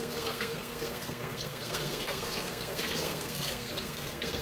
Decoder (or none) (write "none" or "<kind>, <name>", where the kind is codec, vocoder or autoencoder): codec, SNAC